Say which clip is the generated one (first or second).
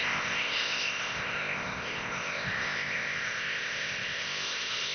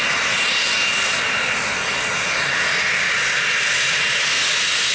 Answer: first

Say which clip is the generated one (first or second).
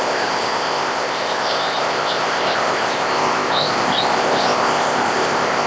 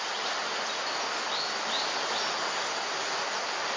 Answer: first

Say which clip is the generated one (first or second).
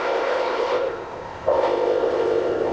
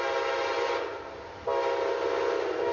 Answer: first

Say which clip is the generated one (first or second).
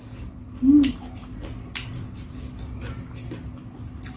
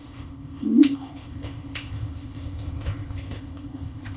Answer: second